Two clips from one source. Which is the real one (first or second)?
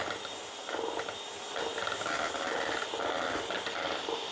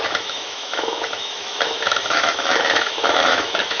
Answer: first